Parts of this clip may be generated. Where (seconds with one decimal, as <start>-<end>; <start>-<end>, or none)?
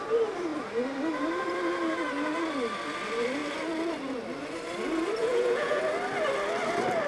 5.2-5.8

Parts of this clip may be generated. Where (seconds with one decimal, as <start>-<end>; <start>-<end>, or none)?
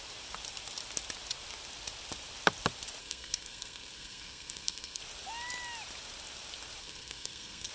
3.0-5.0; 6.8-7.7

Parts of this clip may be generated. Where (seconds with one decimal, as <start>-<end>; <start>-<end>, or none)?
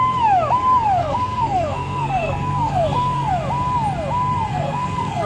1.0-3.3; 4.5-5.3